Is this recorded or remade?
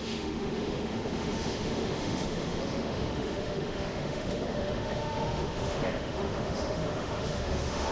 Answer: remade